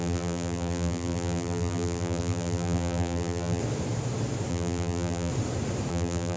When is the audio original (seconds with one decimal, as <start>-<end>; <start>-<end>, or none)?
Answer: 3.6-4.5; 5.3-5.9

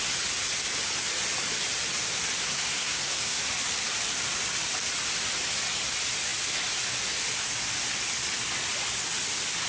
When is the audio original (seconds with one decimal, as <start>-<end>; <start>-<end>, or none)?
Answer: 0.0-2.4; 3.4-9.7

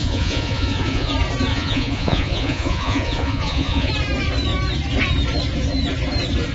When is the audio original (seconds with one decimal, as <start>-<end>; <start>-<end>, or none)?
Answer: 1.1-1.5; 3.9-6.5

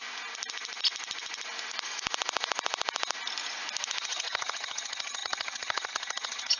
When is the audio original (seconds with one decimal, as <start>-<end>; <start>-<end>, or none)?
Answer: 0.0-4.0

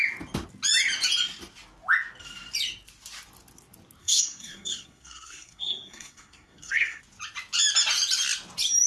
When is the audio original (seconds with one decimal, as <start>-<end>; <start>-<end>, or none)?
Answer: 0.0-4.0; 7.0-8.9

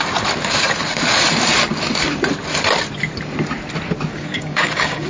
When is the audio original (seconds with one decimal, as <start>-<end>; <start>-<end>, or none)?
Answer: 0.0-4.1